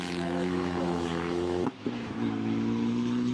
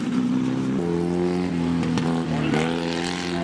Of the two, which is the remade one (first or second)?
first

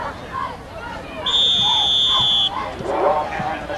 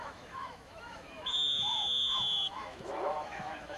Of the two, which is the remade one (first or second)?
second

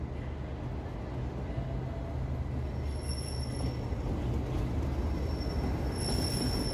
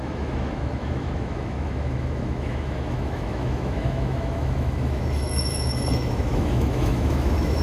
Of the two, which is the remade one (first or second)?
second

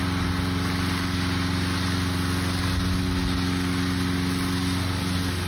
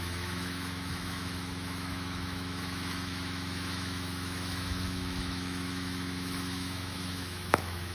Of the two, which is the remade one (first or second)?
second